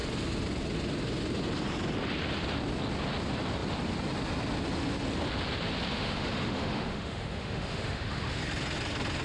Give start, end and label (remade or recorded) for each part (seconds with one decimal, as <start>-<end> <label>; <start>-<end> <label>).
0.0-5.9 recorded; 5.9-8.4 remade; 8.4-9.2 recorded